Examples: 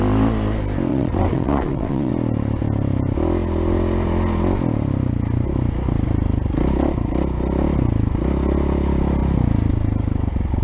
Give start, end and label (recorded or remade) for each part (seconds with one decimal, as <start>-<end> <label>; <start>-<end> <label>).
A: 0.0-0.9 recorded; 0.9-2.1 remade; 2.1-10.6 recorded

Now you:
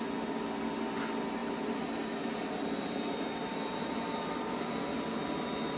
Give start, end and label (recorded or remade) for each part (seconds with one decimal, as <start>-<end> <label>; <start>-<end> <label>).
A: 0.0-1.4 recorded; 1.4-4.9 remade; 4.9-5.8 recorded

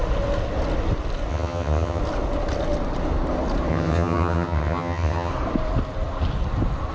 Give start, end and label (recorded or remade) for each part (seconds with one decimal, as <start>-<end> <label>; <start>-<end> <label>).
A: 0.0-1.3 recorded; 1.3-2.0 remade; 2.0-3.7 recorded; 3.7-5.3 remade; 5.3-6.9 recorded

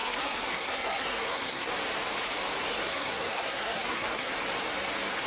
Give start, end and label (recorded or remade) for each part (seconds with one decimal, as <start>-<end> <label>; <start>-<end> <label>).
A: 0.0-1.7 remade; 1.7-2.7 recorded; 2.7-4.3 remade; 4.3-5.3 recorded